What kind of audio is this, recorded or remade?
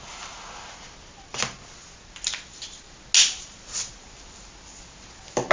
recorded